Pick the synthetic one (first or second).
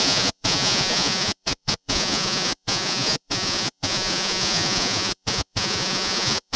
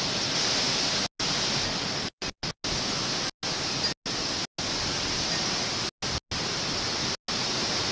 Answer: first